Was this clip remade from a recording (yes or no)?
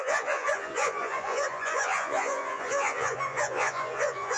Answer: yes